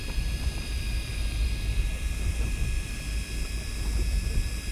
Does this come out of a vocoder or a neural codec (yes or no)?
yes